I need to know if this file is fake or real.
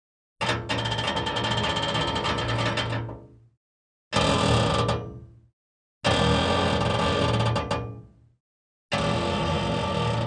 real